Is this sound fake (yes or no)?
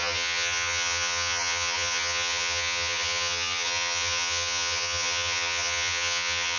yes